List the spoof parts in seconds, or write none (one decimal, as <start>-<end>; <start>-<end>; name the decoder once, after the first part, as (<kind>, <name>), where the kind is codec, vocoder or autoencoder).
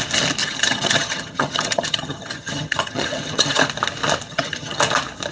0.4-3.6 (vocoder, HiFi-GAN); 4.3-4.8